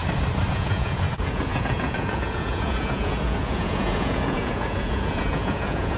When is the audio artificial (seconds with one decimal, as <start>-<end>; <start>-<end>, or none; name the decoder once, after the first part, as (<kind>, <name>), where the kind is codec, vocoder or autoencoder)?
0.5-6.0 (vocoder, Vocos)